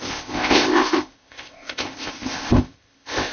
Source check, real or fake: fake